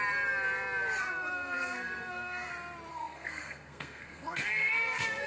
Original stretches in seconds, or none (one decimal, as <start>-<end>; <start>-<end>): 0.0-1.0; 2.5-2.9

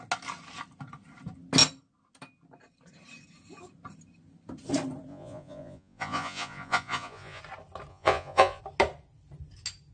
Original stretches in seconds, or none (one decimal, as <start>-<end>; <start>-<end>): 0.0-5.1; 7.4-7.9; 8.6-9.9

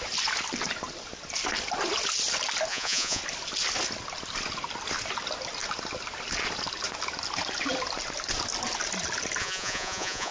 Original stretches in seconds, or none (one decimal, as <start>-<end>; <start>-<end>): 0.0-2.7; 3.2-9.4

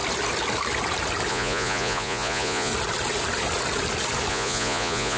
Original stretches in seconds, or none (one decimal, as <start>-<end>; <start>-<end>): 0.0-1.3; 2.7-4.3